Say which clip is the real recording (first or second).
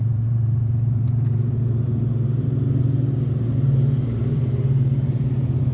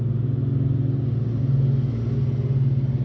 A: second